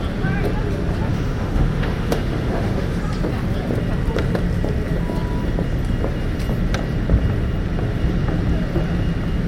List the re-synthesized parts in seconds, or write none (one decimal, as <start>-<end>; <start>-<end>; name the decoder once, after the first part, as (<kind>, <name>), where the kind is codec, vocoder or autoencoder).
1.1-3.0 (autoencoder, DAC-VAE)